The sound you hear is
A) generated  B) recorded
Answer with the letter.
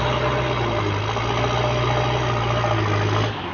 B